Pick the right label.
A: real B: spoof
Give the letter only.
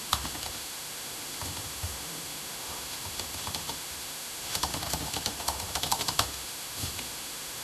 B